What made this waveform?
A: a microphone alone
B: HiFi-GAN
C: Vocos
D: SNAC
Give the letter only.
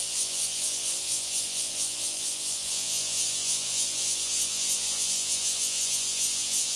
C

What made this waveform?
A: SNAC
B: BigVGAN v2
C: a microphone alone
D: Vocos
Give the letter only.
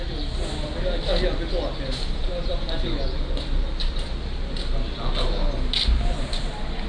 C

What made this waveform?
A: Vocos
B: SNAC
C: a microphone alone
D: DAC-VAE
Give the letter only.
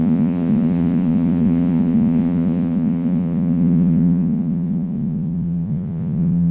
A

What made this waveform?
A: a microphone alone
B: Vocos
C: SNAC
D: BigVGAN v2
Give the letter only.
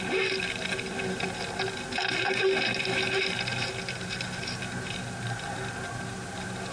A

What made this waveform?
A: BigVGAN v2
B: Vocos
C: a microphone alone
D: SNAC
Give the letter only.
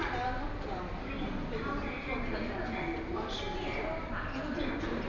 C